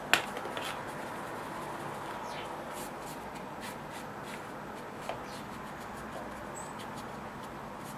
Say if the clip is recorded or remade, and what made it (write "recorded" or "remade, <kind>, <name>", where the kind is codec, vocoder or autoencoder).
recorded